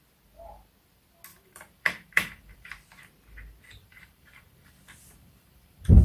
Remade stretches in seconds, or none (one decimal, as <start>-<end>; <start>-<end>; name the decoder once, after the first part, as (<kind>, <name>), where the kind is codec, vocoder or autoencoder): 1.3-2.7 (vocoder, BigVGAN v2); 3.8-6.0